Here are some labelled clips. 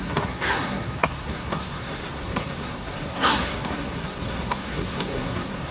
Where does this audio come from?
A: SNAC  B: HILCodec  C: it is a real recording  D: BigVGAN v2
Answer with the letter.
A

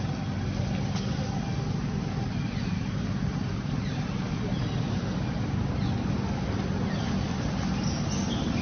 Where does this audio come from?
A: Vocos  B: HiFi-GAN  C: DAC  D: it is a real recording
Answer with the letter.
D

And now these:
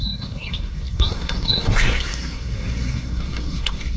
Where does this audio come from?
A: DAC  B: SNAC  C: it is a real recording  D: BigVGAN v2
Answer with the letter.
B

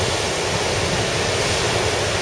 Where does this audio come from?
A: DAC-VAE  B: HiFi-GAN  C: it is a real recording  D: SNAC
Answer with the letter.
C